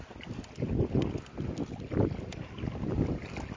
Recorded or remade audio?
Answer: recorded